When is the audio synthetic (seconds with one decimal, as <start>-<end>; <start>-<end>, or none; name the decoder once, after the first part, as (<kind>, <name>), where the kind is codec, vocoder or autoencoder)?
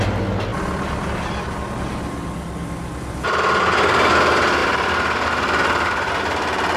4.6-6.1 (vocoder, BigVGAN v2)